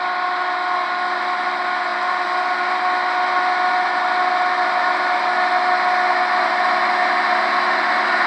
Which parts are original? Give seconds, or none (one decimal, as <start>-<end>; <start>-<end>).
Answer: 0.0-8.3

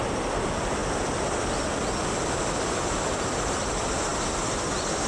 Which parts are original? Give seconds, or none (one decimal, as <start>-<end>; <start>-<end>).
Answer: 0.0-5.1

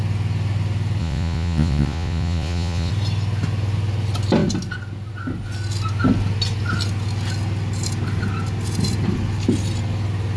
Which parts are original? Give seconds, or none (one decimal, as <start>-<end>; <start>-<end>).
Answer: 0.0-1.0; 2.9-10.4